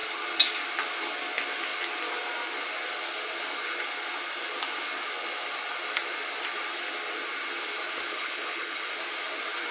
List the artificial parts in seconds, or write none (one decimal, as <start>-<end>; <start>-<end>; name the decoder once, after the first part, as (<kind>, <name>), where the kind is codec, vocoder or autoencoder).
8.1-8.9 (codec, HILCodec)